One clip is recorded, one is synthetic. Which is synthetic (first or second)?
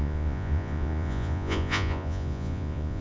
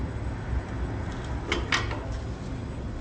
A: first